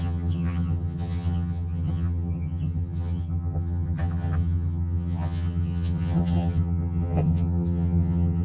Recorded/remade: remade